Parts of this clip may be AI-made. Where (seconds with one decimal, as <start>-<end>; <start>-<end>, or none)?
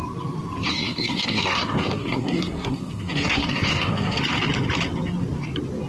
0.7-4.2